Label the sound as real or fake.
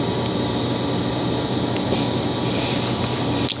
real